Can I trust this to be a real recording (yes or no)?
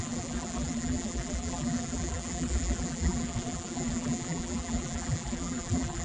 no